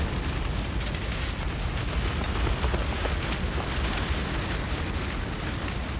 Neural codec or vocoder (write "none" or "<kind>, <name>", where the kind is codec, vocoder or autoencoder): none